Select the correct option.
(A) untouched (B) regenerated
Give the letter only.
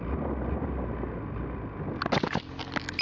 A